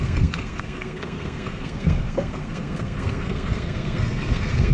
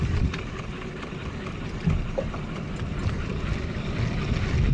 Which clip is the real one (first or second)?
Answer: second